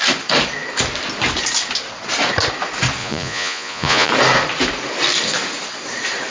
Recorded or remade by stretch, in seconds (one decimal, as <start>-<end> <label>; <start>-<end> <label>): 0.0-3.0 recorded; 3.0-4.1 remade; 4.1-6.3 recorded